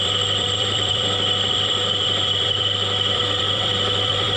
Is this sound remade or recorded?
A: remade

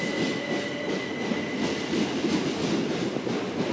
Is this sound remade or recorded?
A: recorded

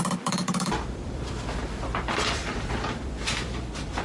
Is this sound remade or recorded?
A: remade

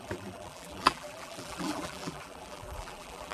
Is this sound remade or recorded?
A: remade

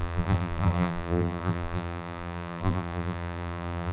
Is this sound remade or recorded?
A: remade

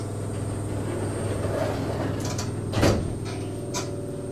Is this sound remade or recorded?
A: recorded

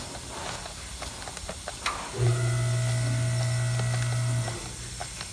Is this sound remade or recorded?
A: recorded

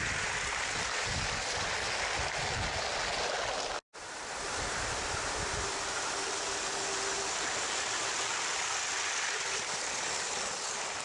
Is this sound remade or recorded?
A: recorded